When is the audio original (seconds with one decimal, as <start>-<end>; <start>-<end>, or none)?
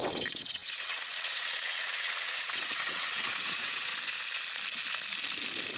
3.9-5.8